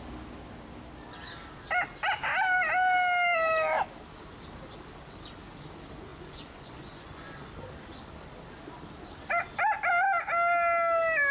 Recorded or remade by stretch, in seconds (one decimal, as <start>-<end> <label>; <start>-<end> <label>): 0.0-6.1 recorded; 6.1-7.5 remade; 7.5-11.3 recorded